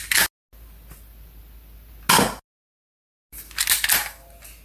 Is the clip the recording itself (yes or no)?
yes